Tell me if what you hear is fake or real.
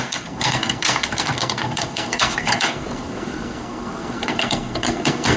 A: fake